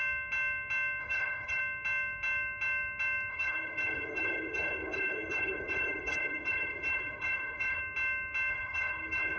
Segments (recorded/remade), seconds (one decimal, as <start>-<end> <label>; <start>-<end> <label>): 0.0-1.0 recorded; 1.0-1.6 remade; 1.6-3.3 recorded; 3.3-7.8 remade; 7.8-8.5 recorded; 8.5-9.4 remade